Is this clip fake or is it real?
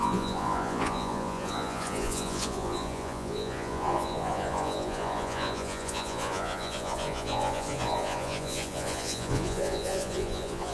fake